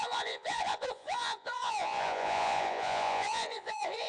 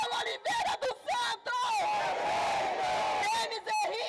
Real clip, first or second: second